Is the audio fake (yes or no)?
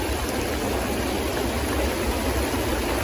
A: no